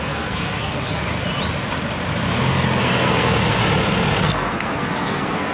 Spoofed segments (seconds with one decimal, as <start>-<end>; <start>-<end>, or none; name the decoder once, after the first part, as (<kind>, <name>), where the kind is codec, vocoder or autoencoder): 0.0-1.0 (codec, SNAC); 2.8-3.6; 4.2-5.5